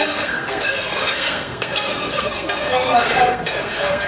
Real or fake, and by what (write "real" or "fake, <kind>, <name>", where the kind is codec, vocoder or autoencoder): fake, codec, SNAC